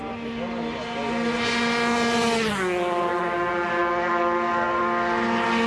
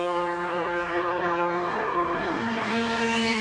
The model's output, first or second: second